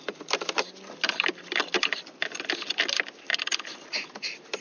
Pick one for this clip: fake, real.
real